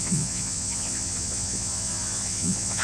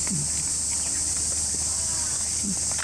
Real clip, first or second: second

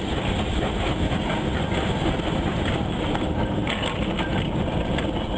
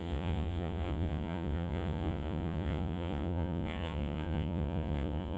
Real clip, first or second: first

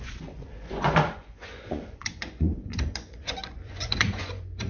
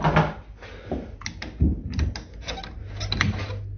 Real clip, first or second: second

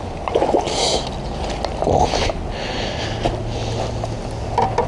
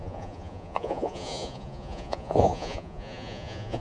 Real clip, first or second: first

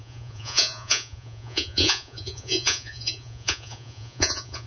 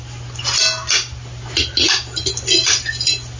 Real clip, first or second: second